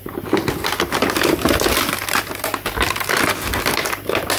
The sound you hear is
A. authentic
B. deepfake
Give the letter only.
A